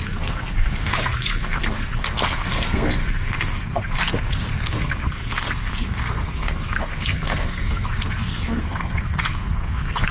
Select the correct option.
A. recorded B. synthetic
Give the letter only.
B